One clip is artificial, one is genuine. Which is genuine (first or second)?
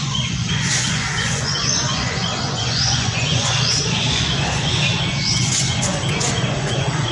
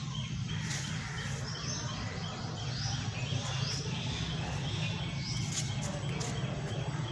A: second